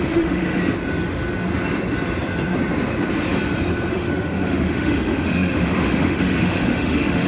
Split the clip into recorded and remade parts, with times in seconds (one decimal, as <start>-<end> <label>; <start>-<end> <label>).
0.0-0.6 remade; 0.6-3.9 recorded; 3.9-7.3 remade

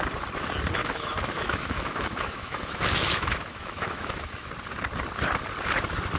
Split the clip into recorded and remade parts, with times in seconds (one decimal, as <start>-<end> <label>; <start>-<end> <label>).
0.0-0.8 recorded; 0.8-4.5 remade; 4.5-6.2 recorded